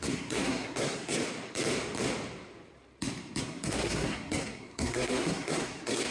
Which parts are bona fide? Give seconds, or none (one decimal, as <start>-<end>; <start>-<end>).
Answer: 1.2-3.4